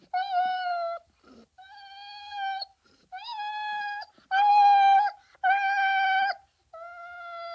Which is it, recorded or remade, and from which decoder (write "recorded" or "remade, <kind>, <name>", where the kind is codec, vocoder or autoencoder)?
recorded